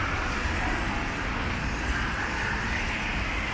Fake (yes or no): yes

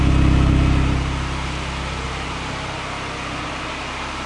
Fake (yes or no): no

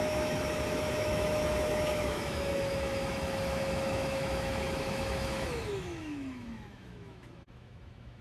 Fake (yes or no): yes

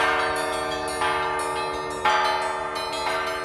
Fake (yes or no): no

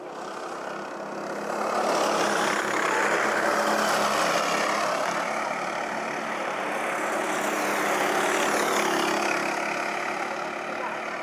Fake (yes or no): no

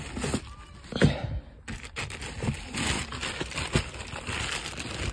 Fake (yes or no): no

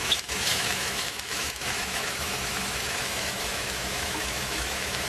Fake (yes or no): yes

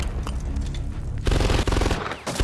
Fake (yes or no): no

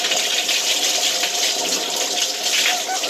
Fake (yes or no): no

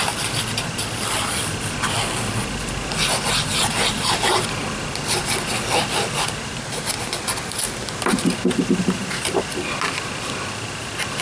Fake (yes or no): no